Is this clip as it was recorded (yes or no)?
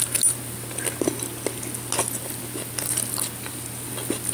yes